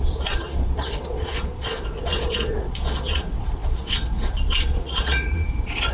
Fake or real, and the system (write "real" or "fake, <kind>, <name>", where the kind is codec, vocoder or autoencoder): fake, vocoder, Vocos